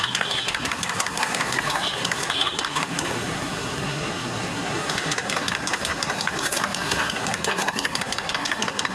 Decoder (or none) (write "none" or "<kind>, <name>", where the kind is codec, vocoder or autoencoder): codec, SNAC